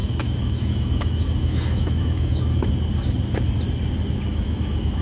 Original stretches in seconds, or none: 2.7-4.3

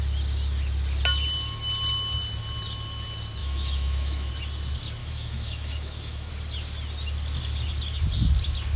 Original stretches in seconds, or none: 0.0-3.4; 4.3-5.0; 6.3-8.8

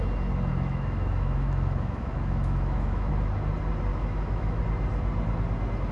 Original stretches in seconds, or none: 0.0-0.5; 3.1-3.9; 4.6-5.9

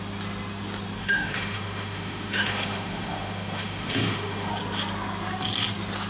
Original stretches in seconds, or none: 0.0-1.0; 4.5-6.1

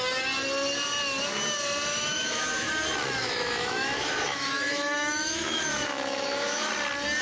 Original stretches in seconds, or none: 0.0-1.9; 2.7-3.2; 6.7-7.2

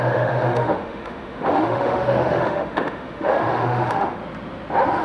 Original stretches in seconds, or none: 4.2-5.0

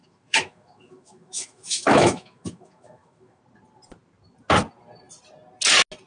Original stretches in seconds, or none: 3.4-6.1